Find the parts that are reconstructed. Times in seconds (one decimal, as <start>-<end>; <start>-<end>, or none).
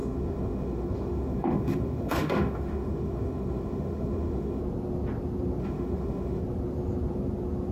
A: 0.0-4.6; 5.6-6.4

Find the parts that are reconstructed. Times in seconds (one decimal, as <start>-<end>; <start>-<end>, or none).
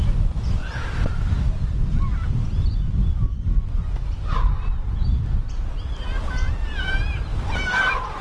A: 0.6-2.3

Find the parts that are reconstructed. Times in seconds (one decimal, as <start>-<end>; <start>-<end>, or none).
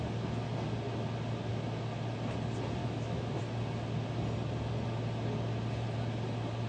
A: 2.8-3.4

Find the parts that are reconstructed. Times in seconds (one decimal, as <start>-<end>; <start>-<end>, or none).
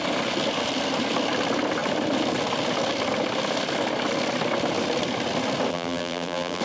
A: 5.7-6.6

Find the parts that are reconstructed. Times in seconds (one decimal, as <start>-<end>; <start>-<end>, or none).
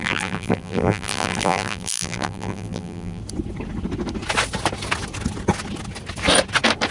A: 0.0-3.2